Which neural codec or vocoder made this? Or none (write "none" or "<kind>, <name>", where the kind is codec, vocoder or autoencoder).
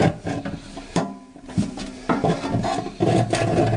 none